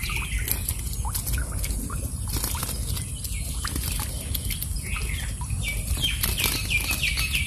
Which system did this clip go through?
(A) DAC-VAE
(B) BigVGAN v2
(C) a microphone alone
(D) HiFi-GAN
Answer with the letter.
C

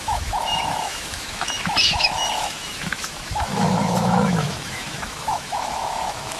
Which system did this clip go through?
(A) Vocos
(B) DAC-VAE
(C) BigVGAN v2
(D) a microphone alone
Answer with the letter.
B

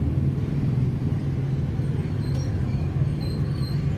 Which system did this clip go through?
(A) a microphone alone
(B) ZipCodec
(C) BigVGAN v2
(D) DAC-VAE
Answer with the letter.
A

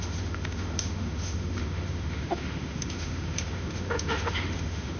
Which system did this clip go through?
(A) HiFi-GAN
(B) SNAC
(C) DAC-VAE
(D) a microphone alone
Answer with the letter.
C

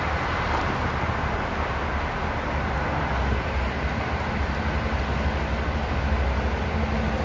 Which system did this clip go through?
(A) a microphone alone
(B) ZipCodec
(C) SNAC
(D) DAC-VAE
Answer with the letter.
A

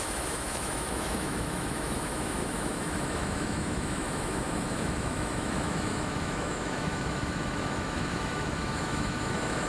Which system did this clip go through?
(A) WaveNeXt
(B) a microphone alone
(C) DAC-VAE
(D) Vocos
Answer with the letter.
C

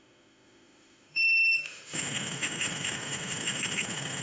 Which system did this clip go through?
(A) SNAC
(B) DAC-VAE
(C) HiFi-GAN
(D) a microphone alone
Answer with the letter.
B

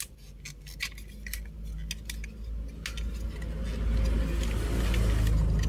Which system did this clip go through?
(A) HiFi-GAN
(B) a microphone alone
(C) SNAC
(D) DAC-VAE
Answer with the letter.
B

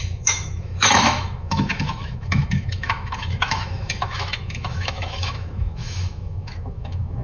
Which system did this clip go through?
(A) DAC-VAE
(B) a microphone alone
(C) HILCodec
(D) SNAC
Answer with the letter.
A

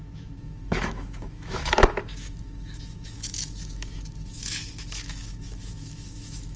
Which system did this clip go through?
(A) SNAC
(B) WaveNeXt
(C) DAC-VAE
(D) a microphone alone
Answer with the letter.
C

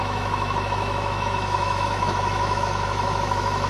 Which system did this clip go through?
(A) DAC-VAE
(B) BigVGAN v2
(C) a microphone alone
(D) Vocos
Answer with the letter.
A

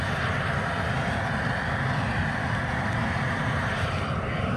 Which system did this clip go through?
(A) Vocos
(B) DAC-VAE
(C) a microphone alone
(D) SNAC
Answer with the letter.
C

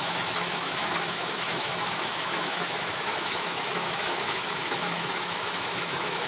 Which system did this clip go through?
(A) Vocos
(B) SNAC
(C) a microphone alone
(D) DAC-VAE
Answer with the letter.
D